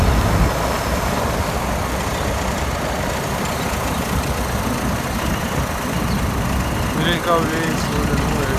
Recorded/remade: recorded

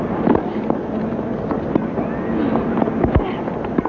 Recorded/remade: recorded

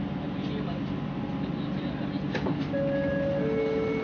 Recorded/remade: recorded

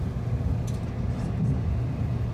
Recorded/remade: recorded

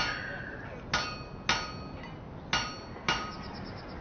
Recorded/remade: recorded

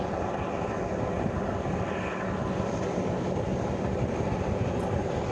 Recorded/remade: recorded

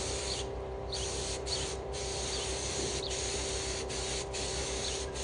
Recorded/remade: remade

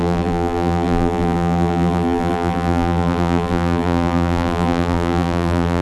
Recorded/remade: remade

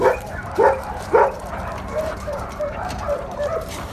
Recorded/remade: remade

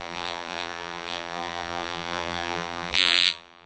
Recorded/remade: remade